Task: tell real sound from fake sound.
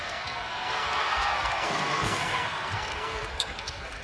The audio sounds fake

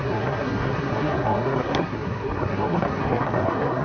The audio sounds fake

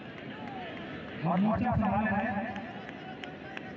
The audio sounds real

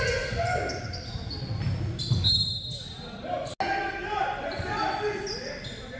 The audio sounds real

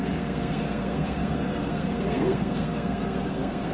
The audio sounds fake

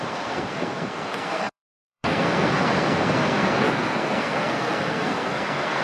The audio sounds fake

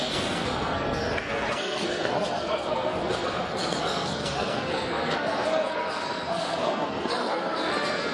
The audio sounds fake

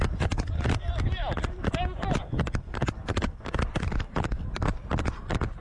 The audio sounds real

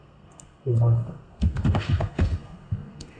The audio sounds fake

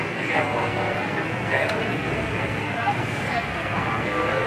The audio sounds fake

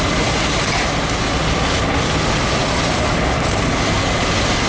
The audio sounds real